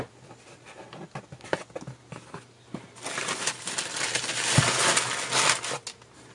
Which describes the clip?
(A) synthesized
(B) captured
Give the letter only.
B